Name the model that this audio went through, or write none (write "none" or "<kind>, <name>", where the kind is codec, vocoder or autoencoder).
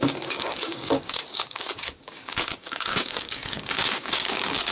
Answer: codec, DAC